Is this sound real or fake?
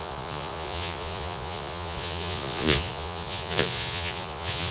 fake